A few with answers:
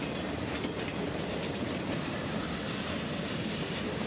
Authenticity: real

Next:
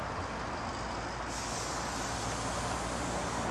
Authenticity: real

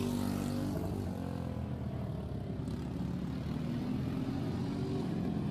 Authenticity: real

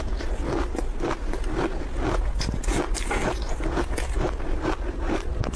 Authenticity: real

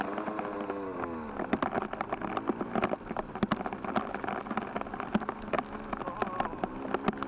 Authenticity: real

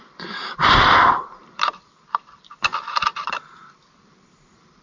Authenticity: fake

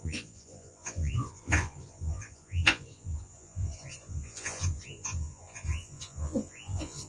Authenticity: fake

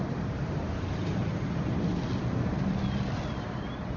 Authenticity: real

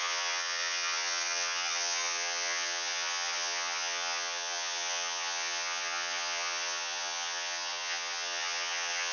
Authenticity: fake